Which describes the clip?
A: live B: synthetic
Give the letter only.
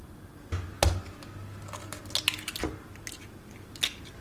A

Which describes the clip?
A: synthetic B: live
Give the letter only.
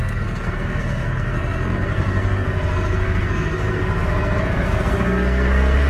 A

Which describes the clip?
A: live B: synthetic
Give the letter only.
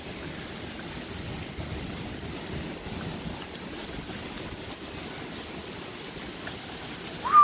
A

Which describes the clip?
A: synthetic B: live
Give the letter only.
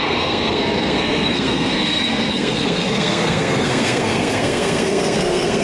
A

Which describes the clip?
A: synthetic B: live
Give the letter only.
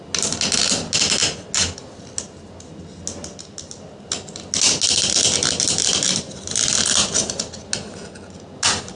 B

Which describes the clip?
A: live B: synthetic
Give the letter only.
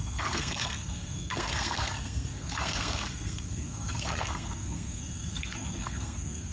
B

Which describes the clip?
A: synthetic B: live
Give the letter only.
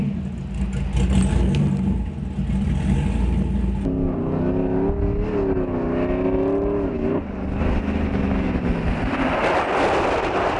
B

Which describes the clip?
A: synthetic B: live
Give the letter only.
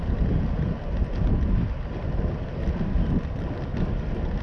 B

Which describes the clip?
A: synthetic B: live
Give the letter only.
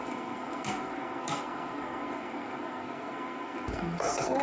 A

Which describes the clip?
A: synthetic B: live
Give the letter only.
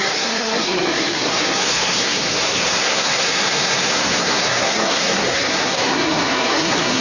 A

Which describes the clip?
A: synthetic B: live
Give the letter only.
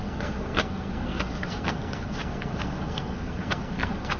A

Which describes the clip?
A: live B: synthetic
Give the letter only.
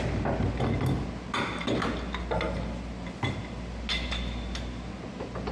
A